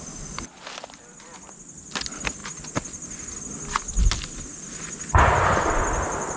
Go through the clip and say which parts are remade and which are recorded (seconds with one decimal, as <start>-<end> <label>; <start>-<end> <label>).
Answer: 0.0-6.4 recorded